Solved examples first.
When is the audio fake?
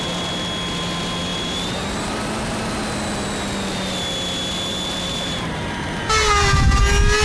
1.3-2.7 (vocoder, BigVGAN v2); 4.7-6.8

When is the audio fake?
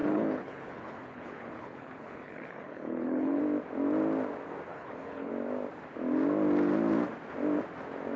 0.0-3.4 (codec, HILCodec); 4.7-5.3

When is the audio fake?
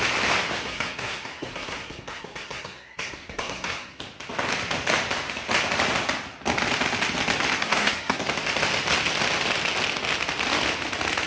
0.6-4.0 (codec, SNAC); 7.6-8.2